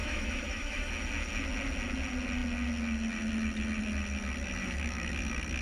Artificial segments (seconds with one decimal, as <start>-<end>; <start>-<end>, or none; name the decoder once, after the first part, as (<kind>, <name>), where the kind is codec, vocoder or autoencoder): 0.0-0.9 (autoencoder, DAC-VAE); 4.6-5.1

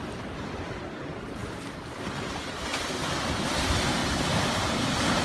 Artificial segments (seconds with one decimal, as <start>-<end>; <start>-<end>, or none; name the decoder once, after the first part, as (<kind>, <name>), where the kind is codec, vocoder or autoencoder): none

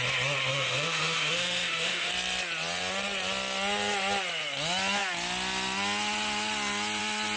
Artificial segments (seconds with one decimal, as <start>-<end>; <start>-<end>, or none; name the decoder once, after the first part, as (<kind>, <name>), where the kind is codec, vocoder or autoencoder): 0.5-2.1 (autoencoder, DAC-VAE)

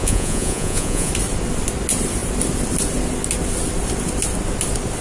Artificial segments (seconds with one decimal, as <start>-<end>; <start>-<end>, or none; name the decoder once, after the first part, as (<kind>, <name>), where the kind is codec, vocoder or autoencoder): 0.0-1.1 (vocoder, Vocos)